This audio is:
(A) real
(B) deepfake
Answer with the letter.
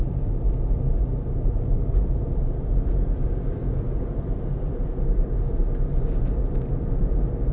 A